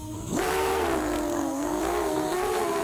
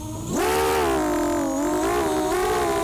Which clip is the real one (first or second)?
second